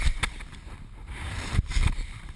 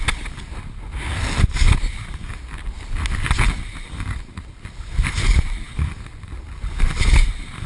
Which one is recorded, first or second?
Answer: second